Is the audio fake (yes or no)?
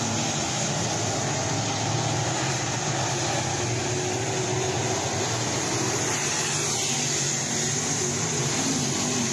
no